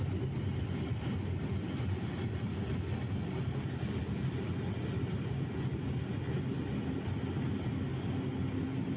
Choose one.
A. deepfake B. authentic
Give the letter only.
B